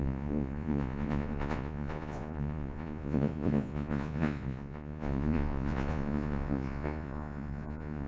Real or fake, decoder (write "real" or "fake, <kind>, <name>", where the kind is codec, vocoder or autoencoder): fake, vocoder, Vocos